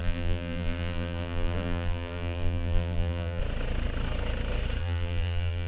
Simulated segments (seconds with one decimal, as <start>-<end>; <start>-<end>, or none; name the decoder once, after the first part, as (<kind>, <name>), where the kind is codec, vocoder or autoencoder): 0.0-3.4 (vocoder, BigVGAN v2); 4.8-5.7

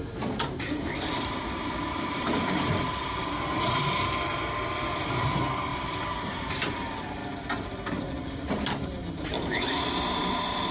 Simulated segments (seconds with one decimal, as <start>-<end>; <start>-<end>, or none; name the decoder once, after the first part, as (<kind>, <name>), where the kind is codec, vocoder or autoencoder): 0.0-7.2 (vocoder, BigVGAN v2); 8.3-10.7

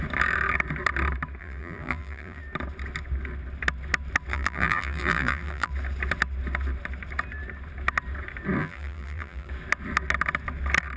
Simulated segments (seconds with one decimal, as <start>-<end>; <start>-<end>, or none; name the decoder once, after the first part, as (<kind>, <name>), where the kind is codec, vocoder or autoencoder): 1.4-2.4 (vocoder, BigVGAN v2); 4.3-5.7; 8.6-9.5

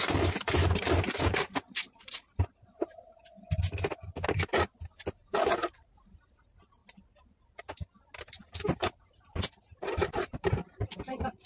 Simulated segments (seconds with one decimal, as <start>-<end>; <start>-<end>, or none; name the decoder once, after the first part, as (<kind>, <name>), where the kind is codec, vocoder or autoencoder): 0.0-3.3 (vocoder, BigVGAN v2); 5.2-6.8; 8.4-11.5

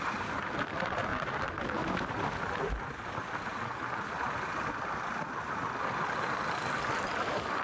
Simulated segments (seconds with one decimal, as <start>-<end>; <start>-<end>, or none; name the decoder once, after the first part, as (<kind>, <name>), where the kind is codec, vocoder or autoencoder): 0.0-1.1 (vocoder, BigVGAN v2); 5.3-7.6

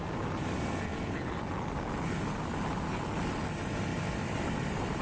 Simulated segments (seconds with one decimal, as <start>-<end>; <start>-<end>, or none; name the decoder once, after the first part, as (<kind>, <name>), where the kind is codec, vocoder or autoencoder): 0.9-2.0 (vocoder, BigVGAN v2); 3.9-5.0

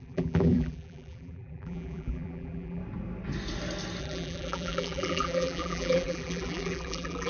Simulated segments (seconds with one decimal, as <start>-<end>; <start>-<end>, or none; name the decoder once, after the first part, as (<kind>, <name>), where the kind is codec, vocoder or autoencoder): 0.0-2.8 (vocoder, BigVGAN v2); 4.0-7.3

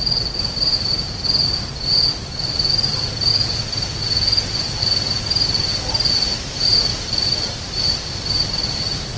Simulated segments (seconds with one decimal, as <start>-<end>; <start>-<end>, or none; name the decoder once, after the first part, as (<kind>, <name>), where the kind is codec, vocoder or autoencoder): 6.9-8.2 (vocoder, BigVGAN v2)